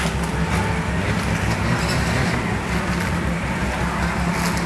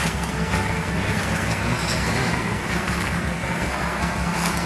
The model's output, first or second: second